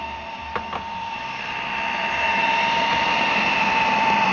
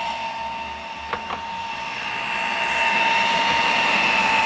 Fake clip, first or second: first